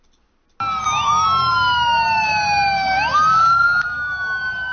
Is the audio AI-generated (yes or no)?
no